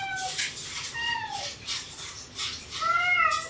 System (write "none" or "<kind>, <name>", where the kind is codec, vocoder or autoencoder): none